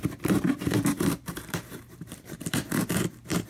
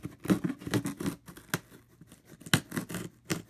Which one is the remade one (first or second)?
first